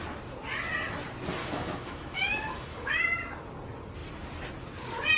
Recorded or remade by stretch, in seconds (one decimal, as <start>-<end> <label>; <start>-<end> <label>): 0.0-1.4 recorded; 1.4-3.1 remade; 3.1-5.2 recorded